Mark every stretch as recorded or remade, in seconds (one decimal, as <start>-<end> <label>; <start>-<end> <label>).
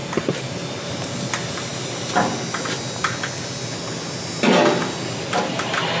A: 0.0-0.9 remade; 0.9-6.0 recorded